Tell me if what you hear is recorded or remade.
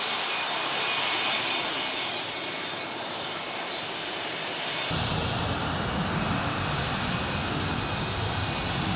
recorded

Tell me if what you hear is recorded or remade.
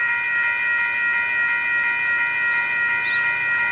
recorded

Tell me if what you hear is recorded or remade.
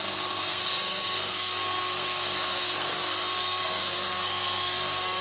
remade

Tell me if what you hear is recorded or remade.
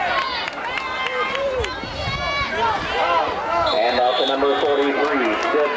recorded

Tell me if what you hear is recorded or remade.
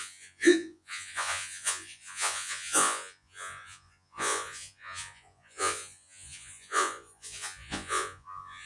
remade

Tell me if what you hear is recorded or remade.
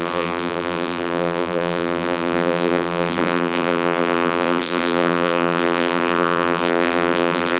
remade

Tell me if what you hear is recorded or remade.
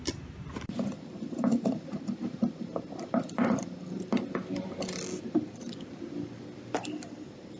recorded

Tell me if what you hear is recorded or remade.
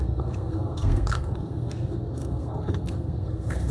remade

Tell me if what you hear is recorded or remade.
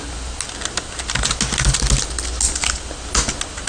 recorded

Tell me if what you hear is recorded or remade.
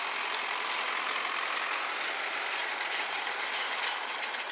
recorded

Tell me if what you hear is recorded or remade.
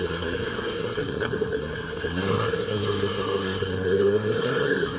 remade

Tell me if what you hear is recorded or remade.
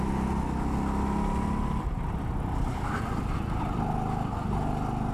recorded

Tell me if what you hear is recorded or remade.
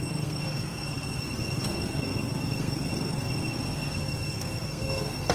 remade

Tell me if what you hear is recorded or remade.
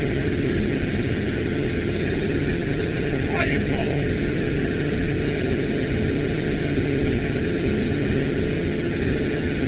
remade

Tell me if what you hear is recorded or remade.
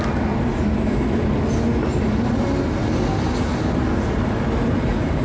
recorded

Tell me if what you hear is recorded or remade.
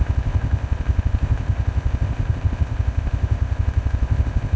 remade